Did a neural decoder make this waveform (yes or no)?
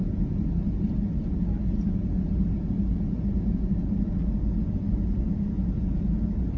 no